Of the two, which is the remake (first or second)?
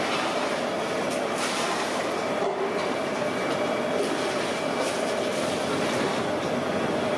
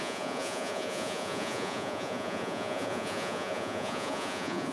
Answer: second